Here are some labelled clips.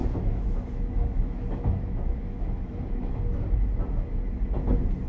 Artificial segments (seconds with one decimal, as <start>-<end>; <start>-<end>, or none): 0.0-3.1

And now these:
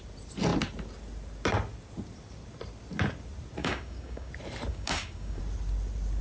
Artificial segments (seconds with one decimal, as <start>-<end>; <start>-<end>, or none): 3.6-4.3; 4.7-5.4

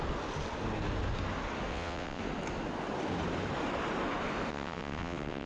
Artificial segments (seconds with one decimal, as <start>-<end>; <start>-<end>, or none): 1.7-2.2; 4.5-5.5

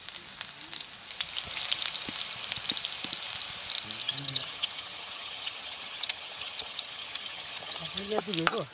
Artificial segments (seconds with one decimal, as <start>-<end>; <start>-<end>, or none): 4.0-8.2

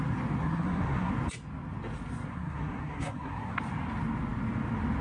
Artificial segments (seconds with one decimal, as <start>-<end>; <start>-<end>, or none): 0.4-1.1; 2.3-3.6

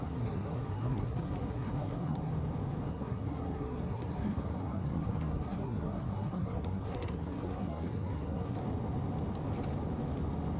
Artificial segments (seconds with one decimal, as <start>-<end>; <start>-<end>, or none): 0.0-2.3; 2.9-8.6

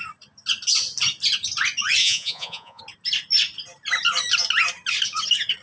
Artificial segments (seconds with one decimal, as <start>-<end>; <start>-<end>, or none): 2.0-2.8

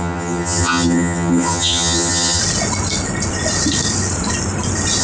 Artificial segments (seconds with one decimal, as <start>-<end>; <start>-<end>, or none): 0.0-2.4